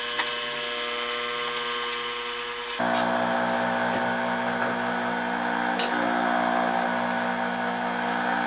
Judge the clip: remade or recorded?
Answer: recorded